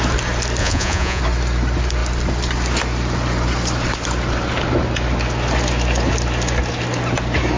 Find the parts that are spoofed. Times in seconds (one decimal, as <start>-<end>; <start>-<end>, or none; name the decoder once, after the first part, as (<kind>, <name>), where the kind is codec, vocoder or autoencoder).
0.6-1.2 (vocoder, Vocos)